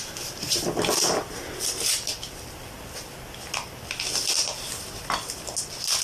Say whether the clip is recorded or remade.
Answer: recorded